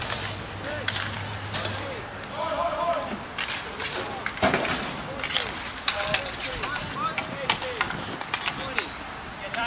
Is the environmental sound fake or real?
real